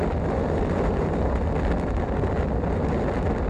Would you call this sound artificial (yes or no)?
no